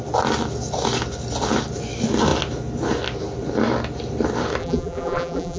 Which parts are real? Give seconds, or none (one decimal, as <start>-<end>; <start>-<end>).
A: 0.0-4.6